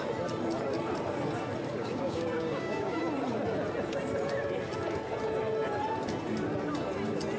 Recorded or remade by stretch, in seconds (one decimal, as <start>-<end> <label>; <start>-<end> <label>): 0.0-1.8 recorded; 1.8-3.0 remade; 3.0-7.4 recorded